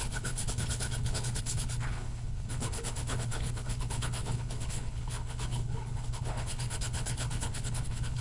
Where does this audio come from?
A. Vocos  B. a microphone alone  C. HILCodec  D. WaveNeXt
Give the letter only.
C